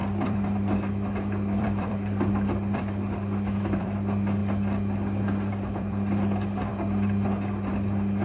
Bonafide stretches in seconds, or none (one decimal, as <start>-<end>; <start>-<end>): 4.4-5.2; 6.7-7.7